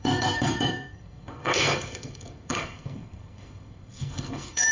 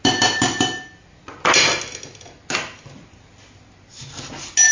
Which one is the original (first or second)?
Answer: second